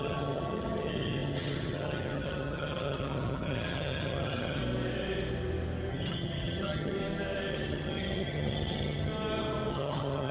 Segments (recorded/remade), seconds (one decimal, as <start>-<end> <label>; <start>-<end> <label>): 0.0-4.6 remade; 4.6-5.9 recorded; 5.9-7.0 remade; 7.0-7.5 recorded; 7.5-9.1 remade; 9.1-9.7 recorded; 9.7-10.3 remade